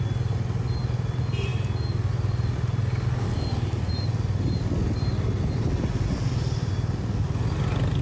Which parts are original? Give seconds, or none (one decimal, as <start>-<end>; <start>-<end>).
0.0-8.0